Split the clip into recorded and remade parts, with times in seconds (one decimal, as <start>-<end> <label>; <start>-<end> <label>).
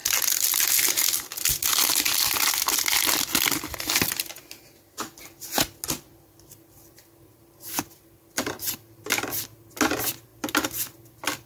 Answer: 0.0-11.5 recorded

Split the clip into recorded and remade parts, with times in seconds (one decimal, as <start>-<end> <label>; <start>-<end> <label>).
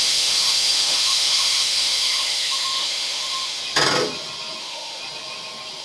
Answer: 0.0-3.6 remade; 3.6-4.6 recorded; 4.6-5.0 remade; 5.0-5.8 recorded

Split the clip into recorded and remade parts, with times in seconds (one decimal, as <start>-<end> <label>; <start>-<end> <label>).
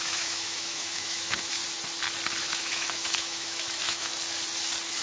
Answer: 0.0-1.6 remade; 1.6-2.4 recorded; 2.4-4.1 remade; 4.1-5.0 recorded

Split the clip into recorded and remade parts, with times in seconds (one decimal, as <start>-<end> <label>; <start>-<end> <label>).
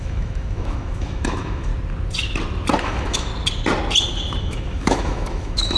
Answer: 0.0-1.7 remade; 1.7-2.8 recorded; 2.8-3.3 remade; 3.3-4.4 recorded; 4.4-5.8 remade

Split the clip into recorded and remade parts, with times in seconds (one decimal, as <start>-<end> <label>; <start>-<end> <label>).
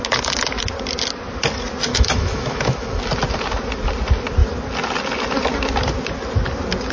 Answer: 0.0-1.9 recorded; 1.9-3.0 remade; 3.0-6.9 recorded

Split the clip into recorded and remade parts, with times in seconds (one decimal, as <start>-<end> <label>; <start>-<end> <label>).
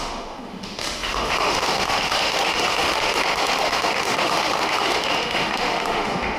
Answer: 0.0-6.4 remade